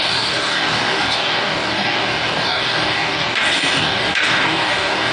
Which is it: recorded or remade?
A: remade